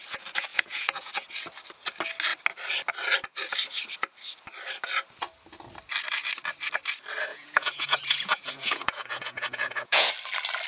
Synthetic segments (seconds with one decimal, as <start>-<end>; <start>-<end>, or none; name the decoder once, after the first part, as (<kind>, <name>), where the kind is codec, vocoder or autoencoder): 0.5-1.1 (vocoder, Vocos); 7.3-10.1